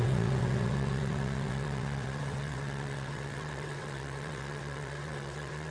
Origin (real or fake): fake